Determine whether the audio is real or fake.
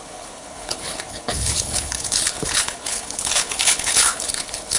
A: fake